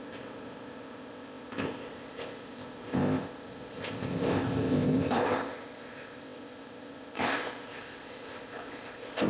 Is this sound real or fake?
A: fake